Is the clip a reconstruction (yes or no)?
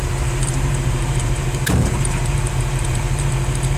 yes